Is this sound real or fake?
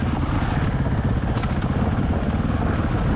real